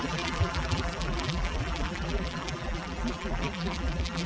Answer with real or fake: fake